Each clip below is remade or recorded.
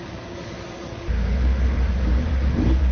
remade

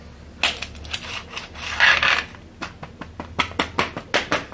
recorded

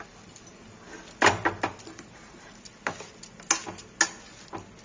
recorded